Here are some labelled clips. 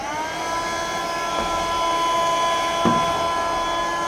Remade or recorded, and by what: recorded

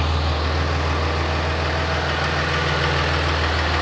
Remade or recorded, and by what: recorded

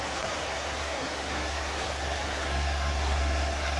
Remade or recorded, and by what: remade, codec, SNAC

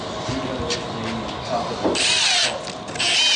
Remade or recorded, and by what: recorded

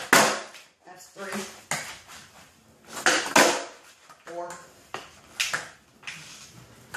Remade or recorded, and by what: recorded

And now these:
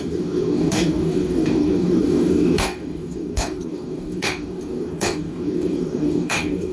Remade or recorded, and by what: remade, codec, DAC